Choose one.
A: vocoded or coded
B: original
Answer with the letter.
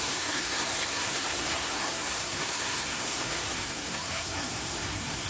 A